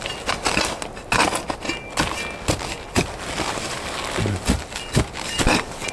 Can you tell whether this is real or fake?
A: real